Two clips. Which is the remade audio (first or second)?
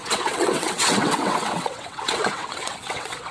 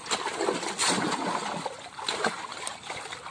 first